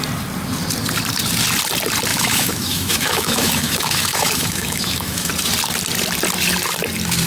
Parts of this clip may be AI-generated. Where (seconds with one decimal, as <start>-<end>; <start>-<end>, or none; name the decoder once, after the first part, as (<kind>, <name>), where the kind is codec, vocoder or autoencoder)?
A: 2.1-5.3 (autoencoder, DAC-VAE)